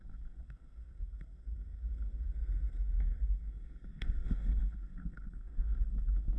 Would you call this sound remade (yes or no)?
yes